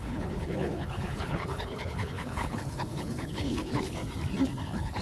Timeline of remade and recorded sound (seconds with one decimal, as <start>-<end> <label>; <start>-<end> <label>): 0.0-4.0 remade; 4.0-4.6 recorded; 4.6-5.0 remade